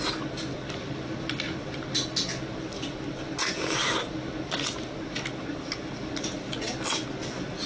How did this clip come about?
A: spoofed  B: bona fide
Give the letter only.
B